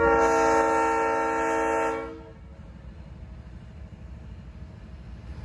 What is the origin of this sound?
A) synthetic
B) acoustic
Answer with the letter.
B